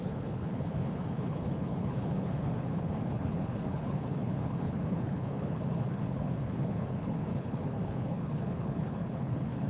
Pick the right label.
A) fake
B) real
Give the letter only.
A